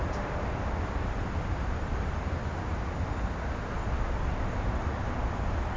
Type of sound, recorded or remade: recorded